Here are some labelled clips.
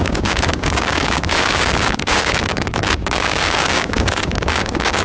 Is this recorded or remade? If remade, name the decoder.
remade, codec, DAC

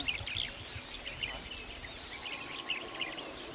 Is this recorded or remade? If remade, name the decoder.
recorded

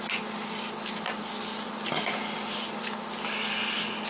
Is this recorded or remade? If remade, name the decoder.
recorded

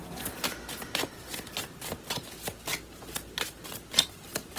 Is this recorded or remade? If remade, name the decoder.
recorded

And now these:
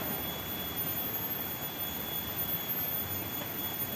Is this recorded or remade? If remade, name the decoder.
recorded